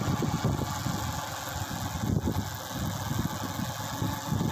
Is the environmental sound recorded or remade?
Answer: recorded